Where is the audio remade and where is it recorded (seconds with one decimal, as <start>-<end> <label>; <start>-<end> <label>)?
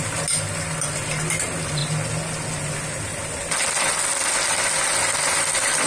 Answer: 0.0-5.9 recorded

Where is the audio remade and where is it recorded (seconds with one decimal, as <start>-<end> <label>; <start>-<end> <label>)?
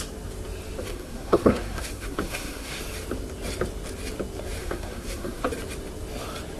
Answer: 0.0-0.9 recorded; 0.9-2.8 remade; 2.8-4.6 recorded; 4.6-5.4 remade; 5.4-6.6 recorded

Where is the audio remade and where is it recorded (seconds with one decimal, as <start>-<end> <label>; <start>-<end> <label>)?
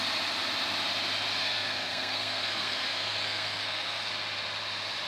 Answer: 0.0-1.4 recorded; 1.4-4.1 remade; 4.1-5.1 recorded